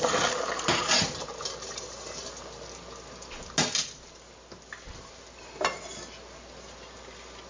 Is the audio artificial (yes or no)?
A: no